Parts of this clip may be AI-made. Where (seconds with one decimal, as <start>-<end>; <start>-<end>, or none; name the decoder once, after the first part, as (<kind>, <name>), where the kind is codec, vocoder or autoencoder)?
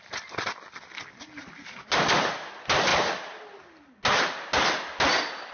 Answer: none